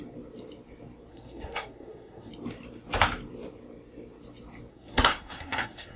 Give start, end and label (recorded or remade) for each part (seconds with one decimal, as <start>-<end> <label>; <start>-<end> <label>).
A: 0.0-1.1 recorded; 1.1-2.3 remade; 2.3-4.7 recorded; 4.7-6.0 remade